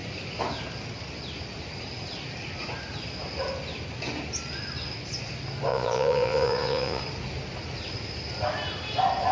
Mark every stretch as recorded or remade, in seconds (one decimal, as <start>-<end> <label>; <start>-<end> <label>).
0.0-5.7 recorded; 5.7-7.0 remade; 7.0-9.3 recorded